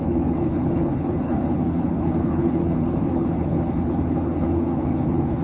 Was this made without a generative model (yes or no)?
no